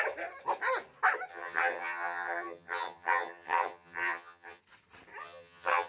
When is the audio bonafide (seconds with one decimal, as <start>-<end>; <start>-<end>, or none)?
0.0-1.3; 4.6-5.2

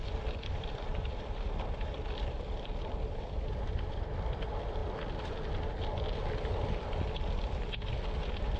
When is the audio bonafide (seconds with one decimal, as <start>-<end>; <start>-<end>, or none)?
4.8-8.6

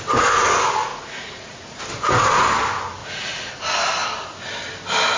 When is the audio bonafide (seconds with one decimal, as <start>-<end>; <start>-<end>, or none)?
0.0-0.9; 1.8-3.0; 3.5-5.2

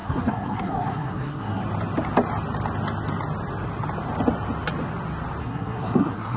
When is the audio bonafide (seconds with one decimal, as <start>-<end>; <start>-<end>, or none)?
1.6-5.4

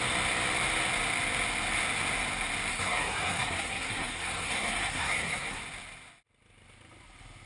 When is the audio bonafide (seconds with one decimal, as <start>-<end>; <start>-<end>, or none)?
0.0-2.7; 5.6-7.5